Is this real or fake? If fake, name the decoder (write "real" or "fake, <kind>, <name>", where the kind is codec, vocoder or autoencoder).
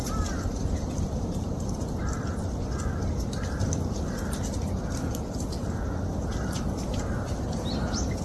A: real